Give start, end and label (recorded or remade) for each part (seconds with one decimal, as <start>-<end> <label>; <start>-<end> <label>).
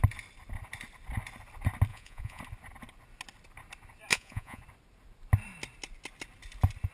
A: 0.0-1.9 recorded; 1.9-2.4 remade; 2.4-4.1 recorded; 4.1-4.6 remade; 4.6-6.9 recorded